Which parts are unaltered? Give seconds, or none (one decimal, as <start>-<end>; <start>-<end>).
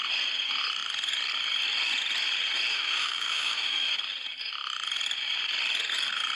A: 0.0-2.7; 3.9-6.4